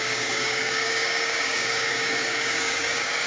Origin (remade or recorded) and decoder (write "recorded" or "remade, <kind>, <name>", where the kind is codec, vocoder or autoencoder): remade, codec, DAC